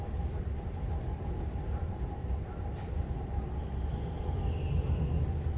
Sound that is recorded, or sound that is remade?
recorded